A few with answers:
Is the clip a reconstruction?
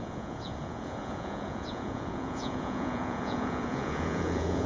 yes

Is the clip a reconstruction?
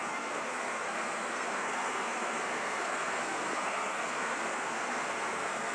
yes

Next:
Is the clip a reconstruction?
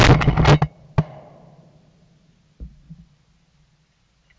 no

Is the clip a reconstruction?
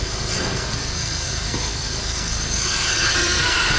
yes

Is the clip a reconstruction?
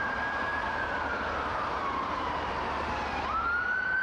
yes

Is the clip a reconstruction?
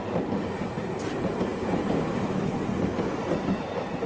no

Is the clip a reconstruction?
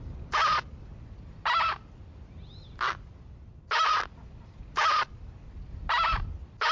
no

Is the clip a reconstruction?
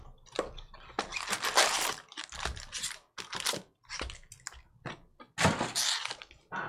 no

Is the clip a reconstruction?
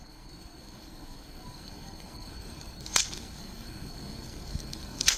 yes